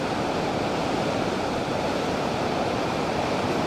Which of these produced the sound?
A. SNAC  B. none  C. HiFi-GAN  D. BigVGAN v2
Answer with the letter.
D